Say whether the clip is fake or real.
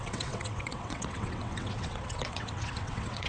fake